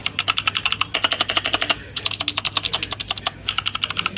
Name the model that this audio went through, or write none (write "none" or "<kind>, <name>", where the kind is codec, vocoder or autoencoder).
none